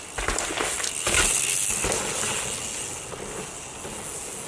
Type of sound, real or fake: real